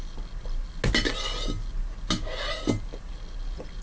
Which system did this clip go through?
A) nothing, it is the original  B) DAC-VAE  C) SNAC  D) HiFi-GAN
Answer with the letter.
A